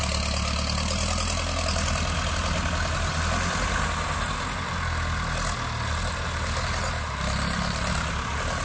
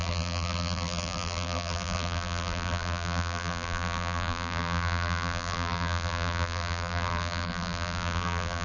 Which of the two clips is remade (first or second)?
second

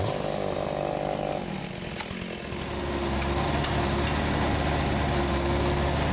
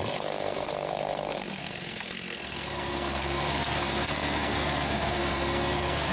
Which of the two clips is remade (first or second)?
second